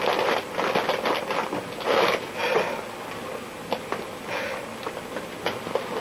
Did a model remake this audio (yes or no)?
no